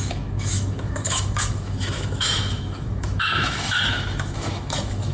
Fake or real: fake